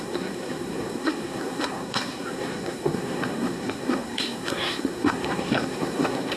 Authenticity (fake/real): fake